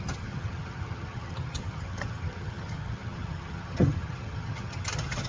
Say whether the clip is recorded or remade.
remade